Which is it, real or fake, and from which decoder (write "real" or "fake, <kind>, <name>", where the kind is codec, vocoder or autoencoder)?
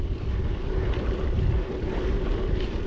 real